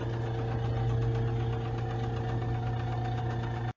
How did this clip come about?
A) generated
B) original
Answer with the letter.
B